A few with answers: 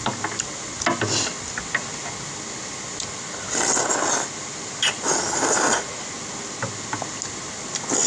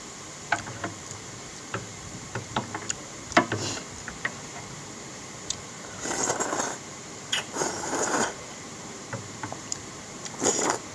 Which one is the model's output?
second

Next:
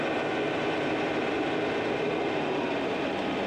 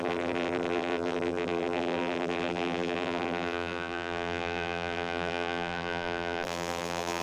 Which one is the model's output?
second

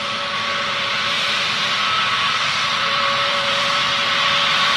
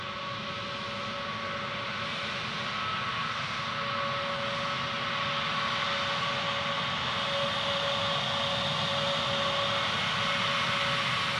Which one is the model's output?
first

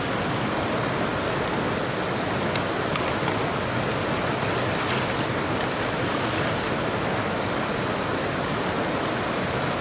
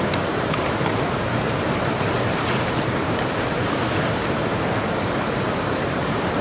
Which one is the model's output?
second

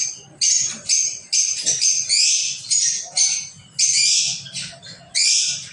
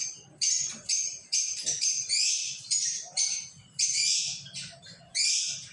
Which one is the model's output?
second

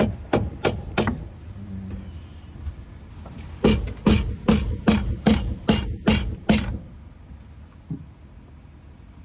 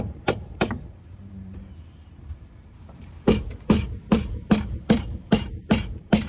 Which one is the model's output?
second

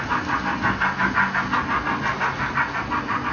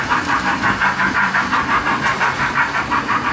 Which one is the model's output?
second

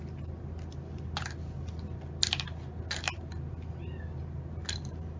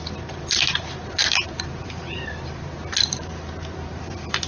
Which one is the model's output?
second